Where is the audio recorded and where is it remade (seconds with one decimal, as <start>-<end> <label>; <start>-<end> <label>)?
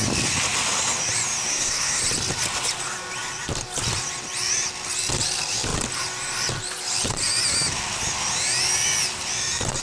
0.0-1.5 recorded; 1.5-2.0 remade; 2.0-9.8 recorded